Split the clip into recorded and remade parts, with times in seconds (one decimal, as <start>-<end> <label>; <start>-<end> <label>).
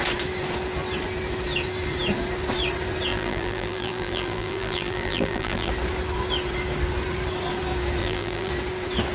0.0-3.1 recorded; 3.1-5.7 remade; 5.7-8.0 recorded; 8.0-8.5 remade; 8.5-9.1 recorded